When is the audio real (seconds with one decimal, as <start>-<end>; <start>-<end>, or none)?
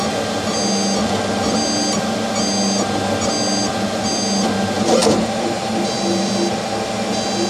0.0-5.0; 6.3-7.5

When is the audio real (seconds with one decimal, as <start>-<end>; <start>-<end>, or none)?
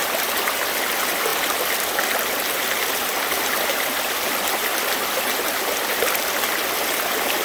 0.0-7.4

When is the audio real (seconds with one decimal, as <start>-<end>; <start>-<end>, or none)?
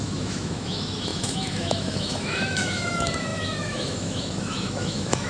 none